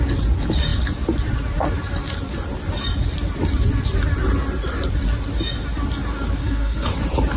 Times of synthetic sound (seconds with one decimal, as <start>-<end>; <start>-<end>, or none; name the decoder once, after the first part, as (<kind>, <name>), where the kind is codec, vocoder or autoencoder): 6.4-6.9 (codec, SNAC)

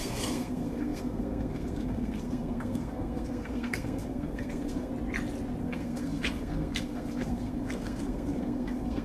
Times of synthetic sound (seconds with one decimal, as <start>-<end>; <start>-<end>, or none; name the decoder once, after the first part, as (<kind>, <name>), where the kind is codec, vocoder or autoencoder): 0.0-4.9 (codec, SNAC); 5.6-9.0

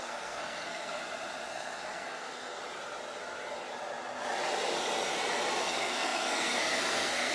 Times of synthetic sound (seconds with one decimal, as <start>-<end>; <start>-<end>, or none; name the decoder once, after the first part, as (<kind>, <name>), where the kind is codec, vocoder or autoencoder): 0.0-1.0 (codec, SNAC); 1.5-2.6; 5.6-7.3